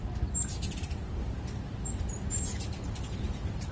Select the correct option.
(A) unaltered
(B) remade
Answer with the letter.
B